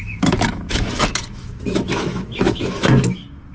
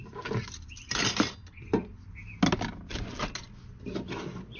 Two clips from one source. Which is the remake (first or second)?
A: first